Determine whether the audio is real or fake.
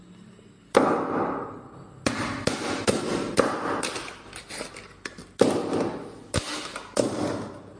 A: real